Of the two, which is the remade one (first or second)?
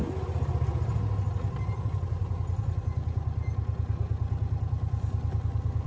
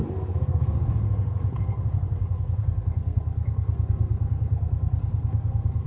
second